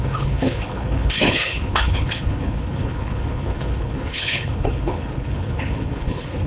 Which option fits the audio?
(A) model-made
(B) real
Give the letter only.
A